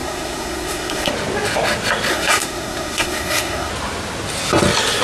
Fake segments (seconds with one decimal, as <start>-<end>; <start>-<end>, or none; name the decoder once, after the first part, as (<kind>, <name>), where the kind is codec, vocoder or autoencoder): 0.0-1.1 (codec, SNAC); 2.1-3.7